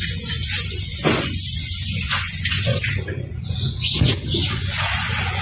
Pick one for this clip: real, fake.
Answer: fake